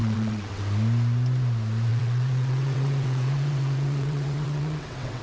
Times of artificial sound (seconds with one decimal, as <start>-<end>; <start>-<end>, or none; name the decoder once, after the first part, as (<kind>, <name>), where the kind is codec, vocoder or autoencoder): 0.0-0.6 (vocoder, WaveNeXt); 1.9-5.2